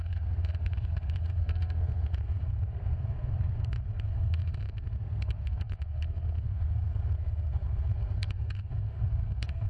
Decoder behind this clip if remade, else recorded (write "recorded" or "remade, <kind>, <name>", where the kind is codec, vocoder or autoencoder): remade, codec, SNAC